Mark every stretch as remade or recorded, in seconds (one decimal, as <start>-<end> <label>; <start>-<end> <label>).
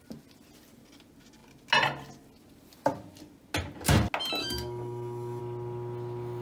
0.0-4.4 recorded; 4.4-5.4 remade; 5.4-6.4 recorded